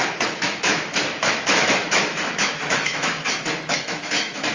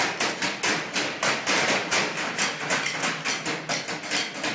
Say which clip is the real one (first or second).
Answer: second